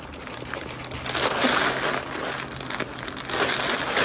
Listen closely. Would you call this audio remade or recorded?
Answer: recorded